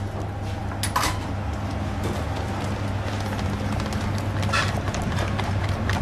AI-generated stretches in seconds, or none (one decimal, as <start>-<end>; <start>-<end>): none